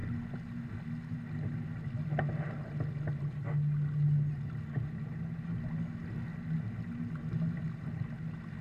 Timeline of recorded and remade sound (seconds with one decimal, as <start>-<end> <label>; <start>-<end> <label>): 0.0-8.6 recorded

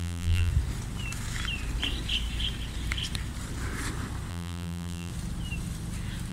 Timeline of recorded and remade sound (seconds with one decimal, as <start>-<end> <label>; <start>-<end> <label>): 0.0-0.5 remade; 0.5-4.3 recorded; 4.3-5.1 remade; 5.1-6.3 recorded

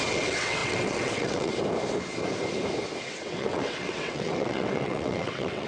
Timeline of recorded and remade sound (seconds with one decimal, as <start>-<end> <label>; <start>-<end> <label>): 0.0-1.5 remade; 1.5-3.0 recorded; 3.0-5.7 remade

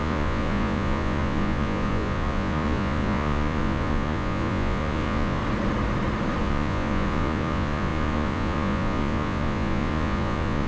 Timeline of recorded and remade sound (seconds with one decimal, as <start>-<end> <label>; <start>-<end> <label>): 0.0-5.4 remade; 5.4-6.4 recorded; 6.4-10.7 remade

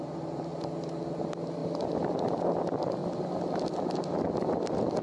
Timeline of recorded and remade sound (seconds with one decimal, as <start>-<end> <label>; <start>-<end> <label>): 0.0-5.0 recorded

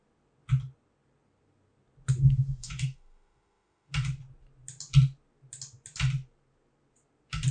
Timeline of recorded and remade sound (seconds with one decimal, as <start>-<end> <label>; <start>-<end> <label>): 0.0-2.6 recorded; 2.6-3.9 remade; 3.9-7.5 recorded